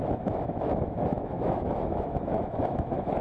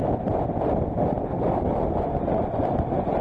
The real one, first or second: second